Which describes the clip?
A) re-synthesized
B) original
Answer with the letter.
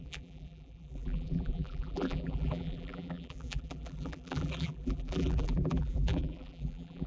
A